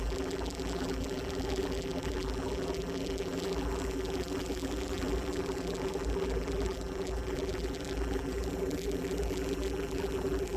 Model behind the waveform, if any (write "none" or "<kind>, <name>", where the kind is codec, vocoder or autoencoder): vocoder, BigVGAN v2